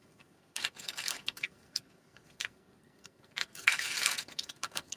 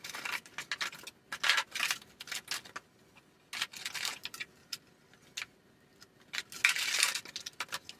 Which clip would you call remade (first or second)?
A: first